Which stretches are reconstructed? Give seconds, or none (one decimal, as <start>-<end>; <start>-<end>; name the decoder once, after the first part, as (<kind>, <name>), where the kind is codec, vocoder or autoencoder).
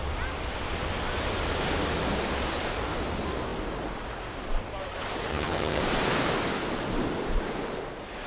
5.3-5.8 (vocoder, HiFi-GAN)